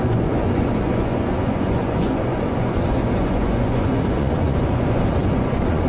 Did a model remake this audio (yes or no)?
yes